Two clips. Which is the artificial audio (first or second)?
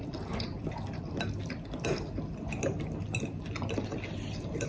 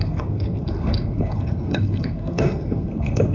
second